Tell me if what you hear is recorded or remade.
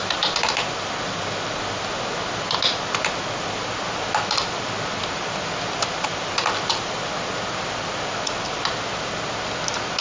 recorded